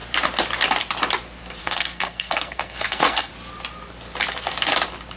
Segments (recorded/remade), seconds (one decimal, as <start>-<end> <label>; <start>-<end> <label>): 0.0-1.6 recorded; 1.6-3.3 remade; 3.3-5.2 recorded